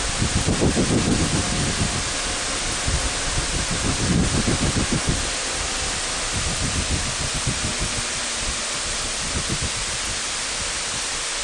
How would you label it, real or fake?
real